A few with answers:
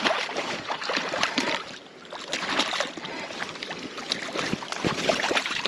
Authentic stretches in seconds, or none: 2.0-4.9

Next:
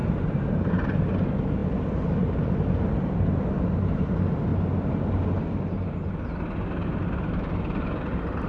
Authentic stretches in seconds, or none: 0.0-8.5

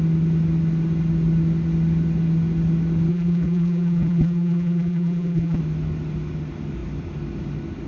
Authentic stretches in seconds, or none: 0.0-3.1; 5.6-7.9